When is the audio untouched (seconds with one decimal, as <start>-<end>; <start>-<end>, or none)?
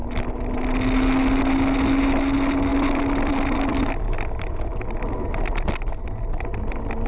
0.0-7.1